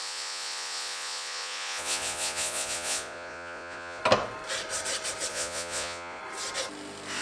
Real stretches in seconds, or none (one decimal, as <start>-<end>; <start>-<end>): 4.0-5.3; 6.2-7.2